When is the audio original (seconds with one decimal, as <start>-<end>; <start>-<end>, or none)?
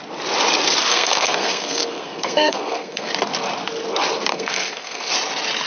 0.0-0.9; 3.1-4.3; 5.1-5.7